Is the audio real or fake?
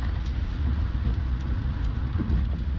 fake